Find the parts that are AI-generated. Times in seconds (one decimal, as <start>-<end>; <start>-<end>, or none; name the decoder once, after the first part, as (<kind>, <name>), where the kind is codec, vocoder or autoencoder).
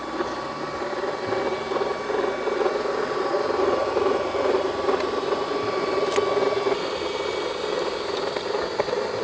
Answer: none